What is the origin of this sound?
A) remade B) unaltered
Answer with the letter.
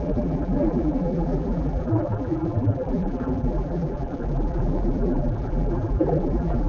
A